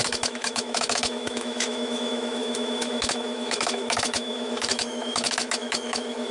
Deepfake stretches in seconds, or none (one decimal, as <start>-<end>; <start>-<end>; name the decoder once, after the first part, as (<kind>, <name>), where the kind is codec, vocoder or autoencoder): 0.0-6.3 (autoencoder, DAC-VAE)